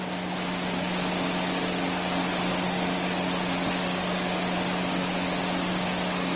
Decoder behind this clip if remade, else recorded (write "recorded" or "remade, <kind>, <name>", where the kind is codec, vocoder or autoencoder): recorded